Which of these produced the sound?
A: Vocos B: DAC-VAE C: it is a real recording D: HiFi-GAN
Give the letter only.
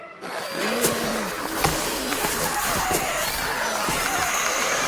C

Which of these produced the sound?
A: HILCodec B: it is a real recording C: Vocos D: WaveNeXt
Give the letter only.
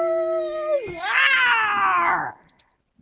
B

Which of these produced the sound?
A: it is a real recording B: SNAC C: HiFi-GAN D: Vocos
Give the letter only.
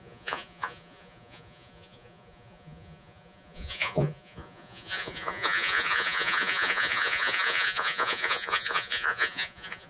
D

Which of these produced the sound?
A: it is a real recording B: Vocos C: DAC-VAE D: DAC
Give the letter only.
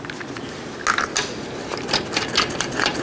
A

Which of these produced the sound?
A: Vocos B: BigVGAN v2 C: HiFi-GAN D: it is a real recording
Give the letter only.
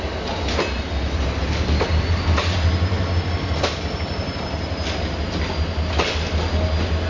D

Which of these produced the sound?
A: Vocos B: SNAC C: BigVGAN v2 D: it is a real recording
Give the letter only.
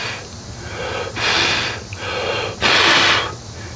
D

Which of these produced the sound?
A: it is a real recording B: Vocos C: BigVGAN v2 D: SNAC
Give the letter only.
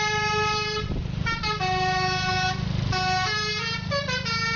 A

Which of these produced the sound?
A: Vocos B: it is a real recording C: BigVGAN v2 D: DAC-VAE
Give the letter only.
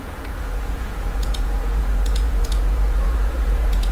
A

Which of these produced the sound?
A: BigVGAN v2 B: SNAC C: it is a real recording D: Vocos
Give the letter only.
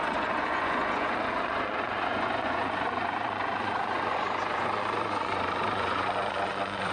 D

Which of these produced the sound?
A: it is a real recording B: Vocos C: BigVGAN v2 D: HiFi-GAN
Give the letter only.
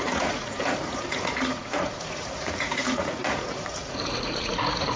B